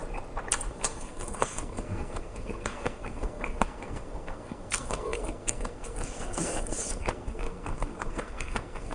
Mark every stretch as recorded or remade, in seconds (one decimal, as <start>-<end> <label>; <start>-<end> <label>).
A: 0.0-0.7 recorded; 0.7-8.9 remade